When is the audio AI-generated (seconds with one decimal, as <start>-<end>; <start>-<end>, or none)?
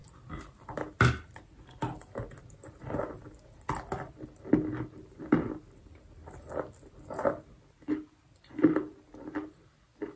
none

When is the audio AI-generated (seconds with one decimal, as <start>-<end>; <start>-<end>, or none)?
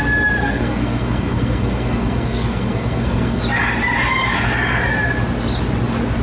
0.4-3.4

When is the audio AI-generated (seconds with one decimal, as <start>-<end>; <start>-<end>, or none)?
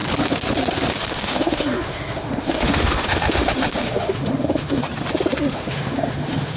1.1-4.8; 5.5-6.6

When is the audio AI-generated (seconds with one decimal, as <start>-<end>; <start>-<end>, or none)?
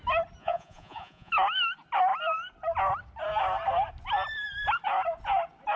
0.4-1.3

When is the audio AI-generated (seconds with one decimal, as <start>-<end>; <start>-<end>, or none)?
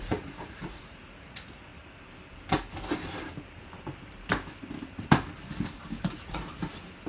0.0-1.7; 6.0-6.5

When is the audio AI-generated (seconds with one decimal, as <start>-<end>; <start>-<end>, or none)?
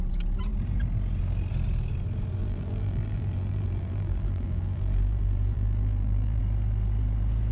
2.4-6.4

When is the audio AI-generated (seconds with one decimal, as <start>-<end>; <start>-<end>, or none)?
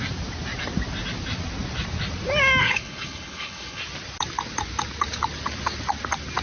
2.6-3.8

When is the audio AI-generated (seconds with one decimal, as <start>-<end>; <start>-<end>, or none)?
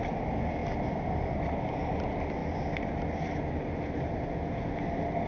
none